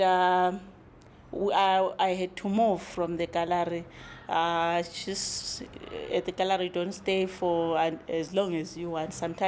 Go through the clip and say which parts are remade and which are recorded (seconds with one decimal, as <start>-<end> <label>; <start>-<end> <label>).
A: 0.0-8.3 recorded; 8.3-9.1 remade; 9.1-9.5 recorded